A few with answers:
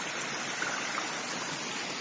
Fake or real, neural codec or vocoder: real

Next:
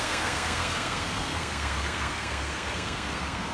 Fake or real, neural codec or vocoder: fake, codec, SNAC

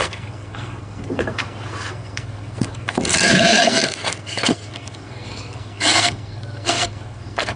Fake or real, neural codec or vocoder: fake, codec, SNAC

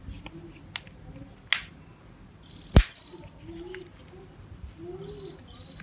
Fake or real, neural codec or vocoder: real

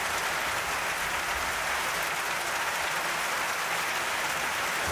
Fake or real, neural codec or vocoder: real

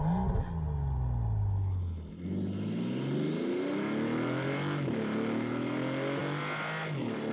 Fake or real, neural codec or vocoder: real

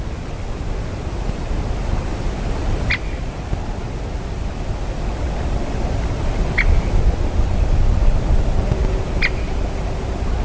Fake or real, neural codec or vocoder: real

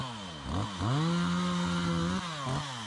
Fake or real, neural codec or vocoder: real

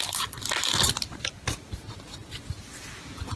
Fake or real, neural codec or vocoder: real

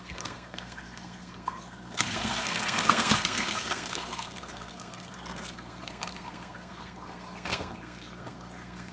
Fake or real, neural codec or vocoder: fake, codec, SNAC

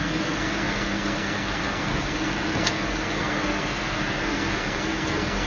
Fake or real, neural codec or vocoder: fake, codec, SNAC